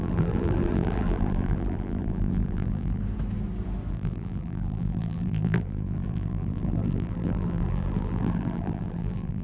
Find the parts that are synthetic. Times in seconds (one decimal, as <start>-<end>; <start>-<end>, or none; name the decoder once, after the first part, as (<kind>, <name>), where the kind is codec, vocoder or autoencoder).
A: 0.0-3.0 (vocoder, BigVGAN v2); 3.9-9.4